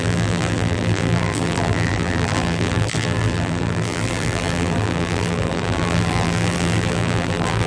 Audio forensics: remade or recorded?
remade